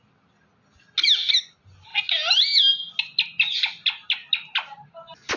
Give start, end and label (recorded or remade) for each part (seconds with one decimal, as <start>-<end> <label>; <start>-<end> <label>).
0.0-5.4 recorded